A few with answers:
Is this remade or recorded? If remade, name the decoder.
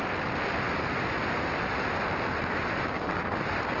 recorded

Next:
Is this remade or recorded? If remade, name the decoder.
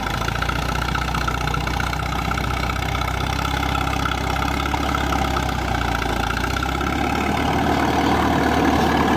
recorded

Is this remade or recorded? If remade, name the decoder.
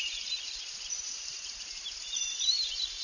remade, vocoder, BigVGAN v2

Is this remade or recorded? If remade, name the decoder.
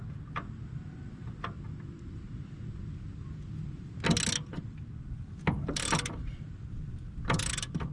recorded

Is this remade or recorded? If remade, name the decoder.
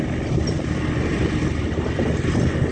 recorded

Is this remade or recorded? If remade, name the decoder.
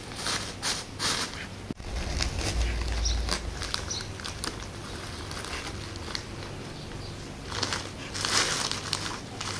recorded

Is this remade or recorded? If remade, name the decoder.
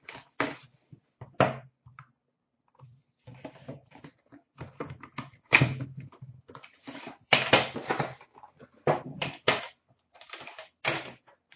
remade, vocoder, BigVGAN v2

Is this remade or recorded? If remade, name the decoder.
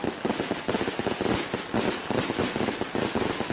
recorded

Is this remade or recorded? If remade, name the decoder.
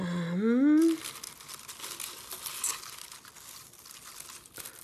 recorded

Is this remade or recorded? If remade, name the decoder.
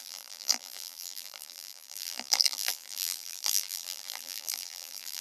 remade, vocoder, BigVGAN v2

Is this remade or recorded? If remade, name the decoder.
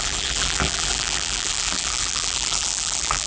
remade, vocoder, BigVGAN v2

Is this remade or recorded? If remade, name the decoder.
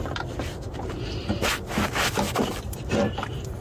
remade, vocoder, BigVGAN v2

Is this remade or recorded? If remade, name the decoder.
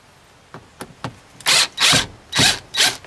recorded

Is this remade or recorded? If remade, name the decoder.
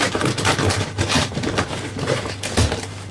recorded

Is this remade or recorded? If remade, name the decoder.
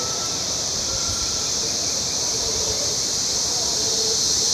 remade, vocoder, BigVGAN v2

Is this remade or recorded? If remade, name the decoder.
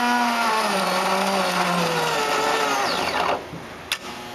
recorded